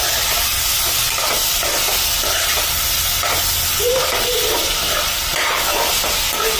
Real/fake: real